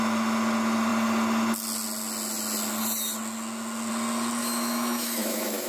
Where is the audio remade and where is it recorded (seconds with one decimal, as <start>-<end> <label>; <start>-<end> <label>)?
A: 0.0-4.4 recorded; 4.4-5.7 remade

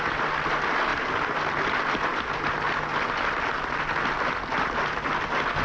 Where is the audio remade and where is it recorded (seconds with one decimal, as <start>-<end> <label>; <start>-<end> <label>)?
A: 0.0-5.6 recorded

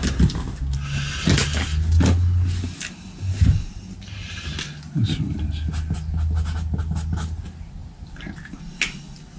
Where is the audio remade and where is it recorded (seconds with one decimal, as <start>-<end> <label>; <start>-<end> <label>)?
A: 0.0-7.8 recorded; 7.8-8.3 remade; 8.3-9.4 recorded

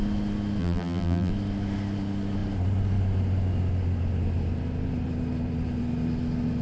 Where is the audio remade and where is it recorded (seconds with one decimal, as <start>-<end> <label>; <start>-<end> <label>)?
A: 0.0-0.6 recorded; 0.6-1.3 remade; 1.3-6.6 recorded

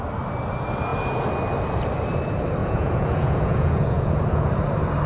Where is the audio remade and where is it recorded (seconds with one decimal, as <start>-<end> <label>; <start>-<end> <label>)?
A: 0.0-2.6 recorded; 2.6-4.5 remade; 4.5-5.1 recorded

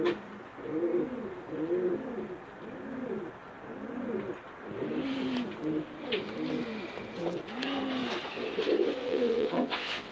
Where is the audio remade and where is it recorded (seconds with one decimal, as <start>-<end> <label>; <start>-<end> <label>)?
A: 0.0-9.0 recorded; 9.0-10.1 remade

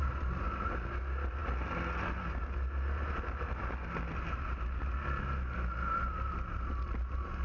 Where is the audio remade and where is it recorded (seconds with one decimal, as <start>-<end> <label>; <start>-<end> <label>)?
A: 0.0-7.4 recorded

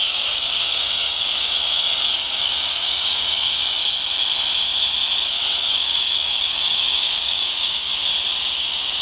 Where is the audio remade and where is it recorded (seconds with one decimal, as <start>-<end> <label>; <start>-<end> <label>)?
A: 0.0-3.8 remade; 3.8-5.7 recorded; 5.7-7.9 remade; 7.9-8.6 recorded; 8.6-9.0 remade